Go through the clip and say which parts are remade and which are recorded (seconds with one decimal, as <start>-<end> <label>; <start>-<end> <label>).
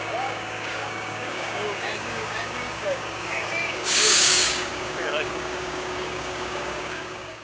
0.0-7.4 remade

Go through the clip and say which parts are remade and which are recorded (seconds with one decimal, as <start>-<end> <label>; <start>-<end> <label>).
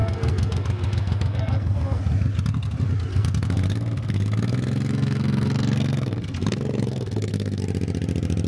0.0-2.0 remade; 2.0-3.1 recorded; 3.1-7.6 remade; 7.6-8.5 recorded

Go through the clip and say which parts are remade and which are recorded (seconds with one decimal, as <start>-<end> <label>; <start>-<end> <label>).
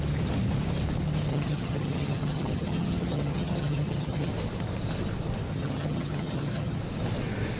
0.0-1.3 recorded; 1.3-4.3 remade; 4.3-5.5 recorded; 5.5-6.8 remade; 6.8-7.6 recorded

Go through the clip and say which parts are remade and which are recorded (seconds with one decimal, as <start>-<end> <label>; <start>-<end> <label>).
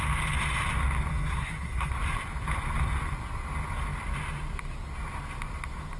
0.0-1.1 recorded; 1.1-1.9 remade; 1.9-6.0 recorded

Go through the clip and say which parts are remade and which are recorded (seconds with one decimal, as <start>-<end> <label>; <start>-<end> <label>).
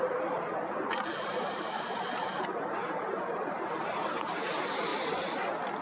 0.0-0.6 remade; 0.6-1.2 recorded; 1.2-4.9 remade; 4.9-5.8 recorded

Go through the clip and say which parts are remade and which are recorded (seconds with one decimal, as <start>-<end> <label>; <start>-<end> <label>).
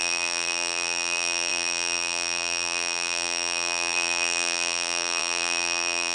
0.0-6.1 remade